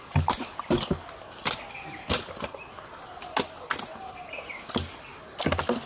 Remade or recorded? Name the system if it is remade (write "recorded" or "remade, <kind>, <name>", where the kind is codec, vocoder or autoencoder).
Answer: recorded